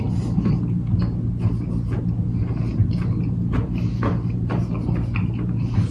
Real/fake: real